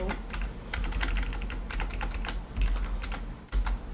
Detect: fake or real real